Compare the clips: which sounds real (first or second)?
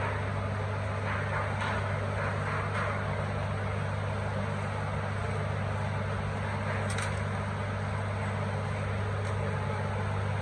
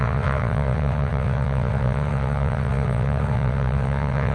first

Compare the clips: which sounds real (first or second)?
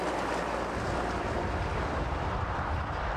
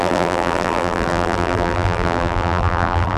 first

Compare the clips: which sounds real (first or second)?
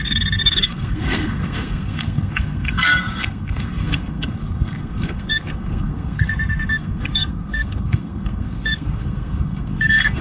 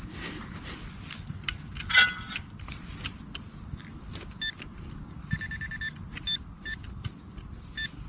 second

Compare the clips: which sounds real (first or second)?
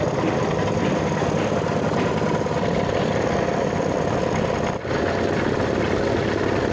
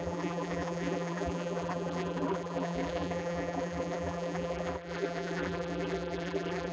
first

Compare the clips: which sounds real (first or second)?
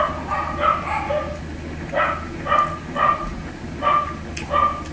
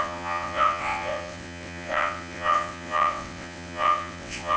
first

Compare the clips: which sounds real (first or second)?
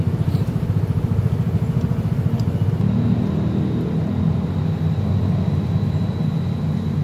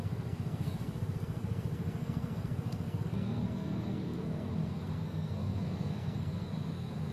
first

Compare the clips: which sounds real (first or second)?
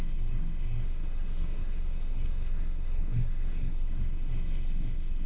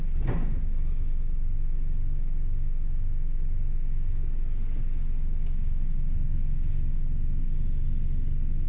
second